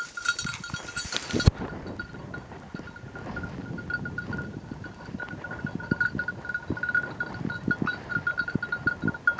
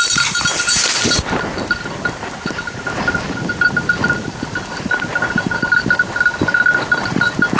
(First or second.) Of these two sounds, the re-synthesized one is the second